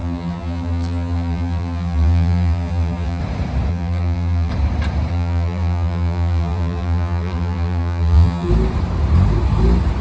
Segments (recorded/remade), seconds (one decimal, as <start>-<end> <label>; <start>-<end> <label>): 0.0-3.2 remade; 3.2-3.7 recorded; 3.7-4.5 remade; 4.5-5.1 recorded; 5.1-8.5 remade; 8.5-10.0 recorded